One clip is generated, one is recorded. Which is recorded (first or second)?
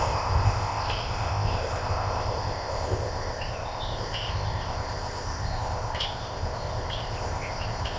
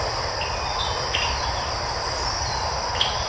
second